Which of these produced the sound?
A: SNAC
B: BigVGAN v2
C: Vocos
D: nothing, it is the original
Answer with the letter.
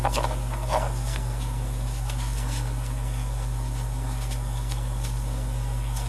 A